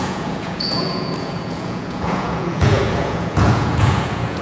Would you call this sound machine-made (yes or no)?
yes